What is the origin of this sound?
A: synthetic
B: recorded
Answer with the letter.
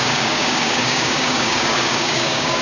A